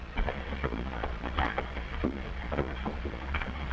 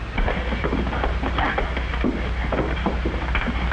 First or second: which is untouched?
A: second